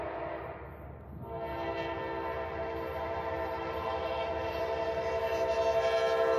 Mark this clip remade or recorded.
recorded